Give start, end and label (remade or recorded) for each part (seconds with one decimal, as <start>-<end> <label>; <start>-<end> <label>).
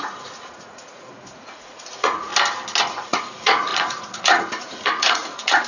0.0-2.3 remade; 2.3-2.8 recorded; 2.8-5.7 remade